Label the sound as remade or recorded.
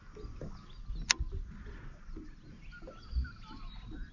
recorded